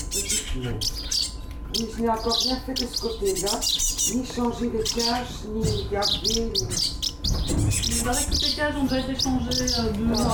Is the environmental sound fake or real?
real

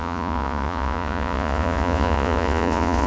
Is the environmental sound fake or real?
fake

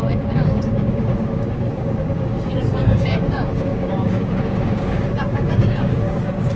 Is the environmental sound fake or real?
fake